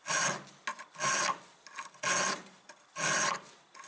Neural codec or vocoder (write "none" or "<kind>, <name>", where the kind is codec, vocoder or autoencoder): none